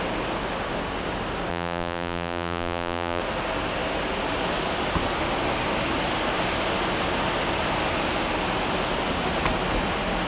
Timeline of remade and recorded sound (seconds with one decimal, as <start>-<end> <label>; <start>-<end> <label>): 0.0-1.5 recorded; 1.5-3.2 remade; 3.2-10.3 recorded